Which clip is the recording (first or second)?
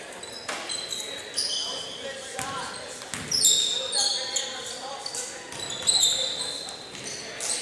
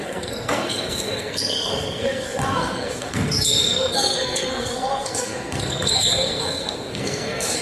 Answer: first